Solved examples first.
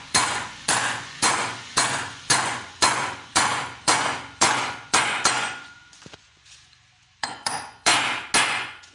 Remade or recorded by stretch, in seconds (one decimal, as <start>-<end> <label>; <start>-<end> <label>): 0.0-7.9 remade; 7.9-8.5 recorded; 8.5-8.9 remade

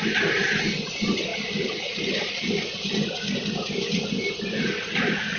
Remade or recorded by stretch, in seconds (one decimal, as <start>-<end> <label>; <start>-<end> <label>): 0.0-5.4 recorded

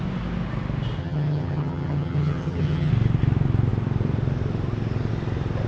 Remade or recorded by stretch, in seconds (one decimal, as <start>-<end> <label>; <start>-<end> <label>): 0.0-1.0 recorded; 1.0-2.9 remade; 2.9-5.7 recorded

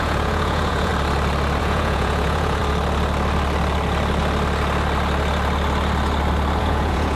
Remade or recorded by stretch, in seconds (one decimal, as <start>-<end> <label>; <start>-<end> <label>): 0.0-0.9 remade; 0.9-1.6 recorded; 1.6-2.6 remade; 2.6-6.6 recorded; 6.6-7.1 remade

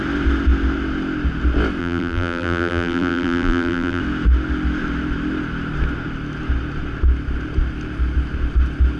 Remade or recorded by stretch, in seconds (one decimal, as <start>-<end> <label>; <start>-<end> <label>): 0.0-1.8 recorded; 1.8-4.0 remade; 4.0-9.0 recorded

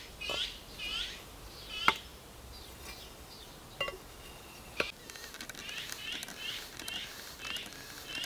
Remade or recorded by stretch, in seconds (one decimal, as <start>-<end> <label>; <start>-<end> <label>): 0.0-8.3 recorded

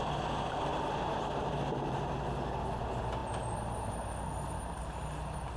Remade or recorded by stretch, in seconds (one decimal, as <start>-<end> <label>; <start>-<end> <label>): 0.0-0.7 recorded; 0.7-2.0 remade; 2.0-5.6 recorded